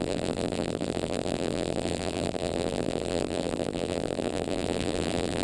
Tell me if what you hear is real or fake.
fake